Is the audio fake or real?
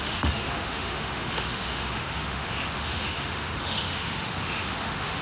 fake